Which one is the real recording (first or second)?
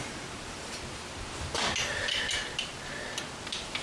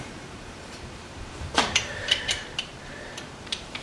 first